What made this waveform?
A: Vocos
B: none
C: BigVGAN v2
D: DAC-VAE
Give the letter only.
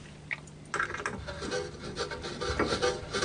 B